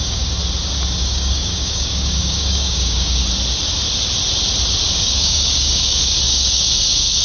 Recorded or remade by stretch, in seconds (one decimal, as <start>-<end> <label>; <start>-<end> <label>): 0.0-0.4 remade; 0.4-1.0 recorded; 1.0-3.2 remade; 3.2-4.9 recorded; 4.9-7.2 remade